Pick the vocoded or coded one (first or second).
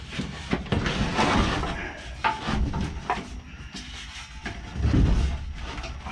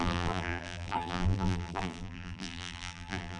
second